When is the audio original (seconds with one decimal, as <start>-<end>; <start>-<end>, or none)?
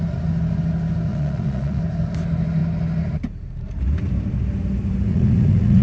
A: 0.0-1.1; 1.8-5.1